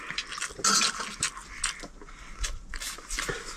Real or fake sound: real